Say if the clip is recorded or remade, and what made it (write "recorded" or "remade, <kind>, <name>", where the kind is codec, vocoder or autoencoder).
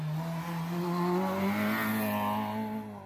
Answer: recorded